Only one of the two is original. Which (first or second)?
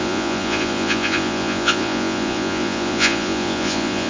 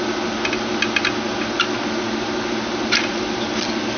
second